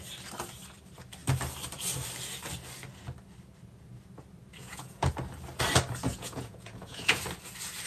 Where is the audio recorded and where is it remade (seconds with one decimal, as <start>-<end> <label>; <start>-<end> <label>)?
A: 0.0-4.6 recorded; 4.6-5.1 remade; 5.1-6.1 recorded; 6.1-7.2 remade; 7.2-7.9 recorded